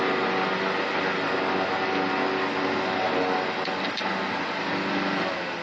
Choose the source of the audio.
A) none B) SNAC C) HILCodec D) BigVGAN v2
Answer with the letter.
A